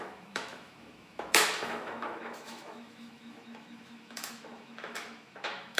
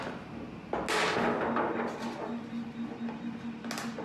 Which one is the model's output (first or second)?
first